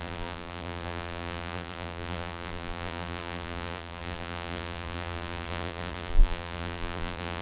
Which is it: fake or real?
fake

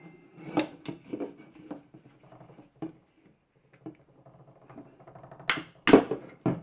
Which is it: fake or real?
real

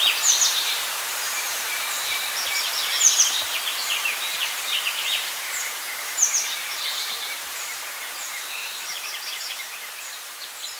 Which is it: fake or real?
fake